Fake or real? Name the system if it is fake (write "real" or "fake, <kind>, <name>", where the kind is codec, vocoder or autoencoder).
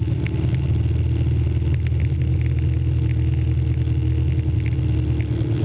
real